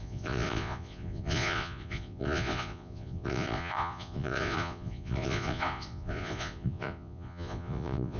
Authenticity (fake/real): fake